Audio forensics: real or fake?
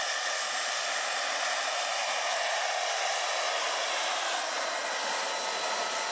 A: real